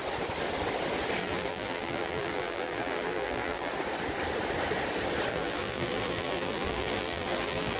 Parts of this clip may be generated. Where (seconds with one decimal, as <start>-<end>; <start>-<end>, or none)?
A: 1.2-3.7; 5.3-7.8